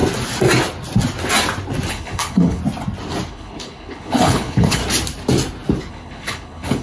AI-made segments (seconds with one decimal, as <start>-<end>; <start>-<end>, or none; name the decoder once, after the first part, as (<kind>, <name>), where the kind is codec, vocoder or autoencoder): 1.9-2.6 (codec, HILCodec); 3.3-4.8; 5.9-6.8